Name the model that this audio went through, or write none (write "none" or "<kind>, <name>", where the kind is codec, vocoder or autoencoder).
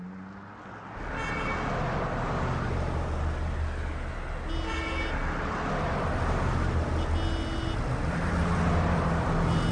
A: none